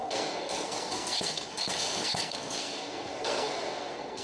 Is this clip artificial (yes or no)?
yes